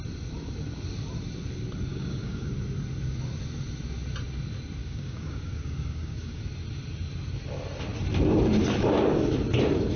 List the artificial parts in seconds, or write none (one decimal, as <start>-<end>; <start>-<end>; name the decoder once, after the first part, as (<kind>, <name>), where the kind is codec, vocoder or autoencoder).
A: 1.9-2.5 (codec, DAC); 4.8-6.4

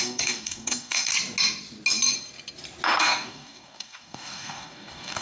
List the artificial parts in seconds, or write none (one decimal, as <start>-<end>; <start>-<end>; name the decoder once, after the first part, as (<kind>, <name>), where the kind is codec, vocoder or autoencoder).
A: 0.0-1.1 (codec, DAC); 3.0-5.2

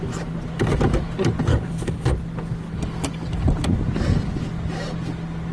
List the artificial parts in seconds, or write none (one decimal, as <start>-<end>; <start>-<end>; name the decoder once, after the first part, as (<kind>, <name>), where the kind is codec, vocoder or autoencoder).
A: 1.5-2.0 (codec, DAC)

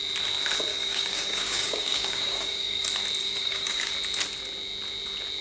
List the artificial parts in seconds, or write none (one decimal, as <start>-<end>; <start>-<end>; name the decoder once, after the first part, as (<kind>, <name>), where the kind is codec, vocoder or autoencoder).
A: 0.7-2.8 (codec, DAC); 3.2-3.9

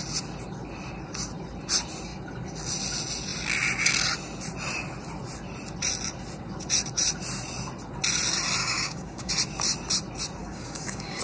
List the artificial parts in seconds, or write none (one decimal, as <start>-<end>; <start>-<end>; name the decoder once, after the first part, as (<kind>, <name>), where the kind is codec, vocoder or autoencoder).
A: 8.6-9.3 (codec, DAC); 10.4-11.2